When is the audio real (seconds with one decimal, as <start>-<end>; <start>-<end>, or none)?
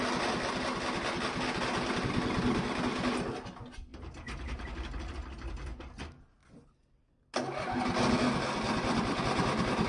0.0-9.9